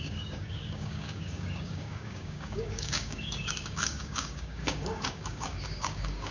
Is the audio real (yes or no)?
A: no